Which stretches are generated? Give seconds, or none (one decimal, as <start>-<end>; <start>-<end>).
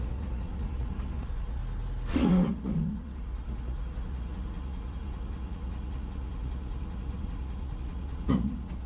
0.0-1.6; 2.1-8.9